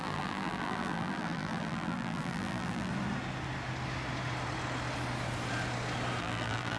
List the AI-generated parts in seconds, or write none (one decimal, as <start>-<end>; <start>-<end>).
0.0-2.9; 6.2-6.8